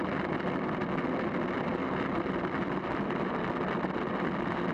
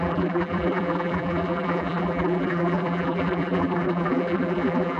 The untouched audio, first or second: first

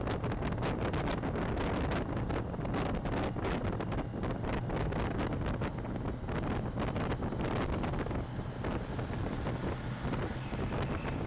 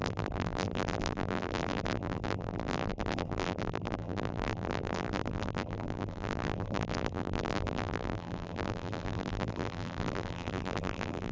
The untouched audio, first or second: first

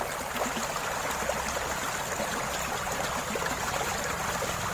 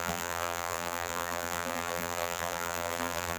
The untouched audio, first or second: first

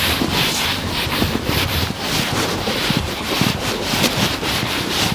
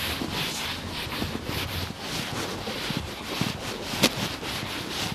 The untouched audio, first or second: second